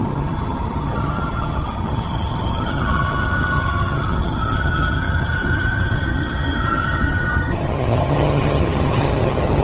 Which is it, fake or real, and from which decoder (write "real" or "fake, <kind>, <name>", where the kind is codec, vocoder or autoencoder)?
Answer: fake, vocoder, HiFi-GAN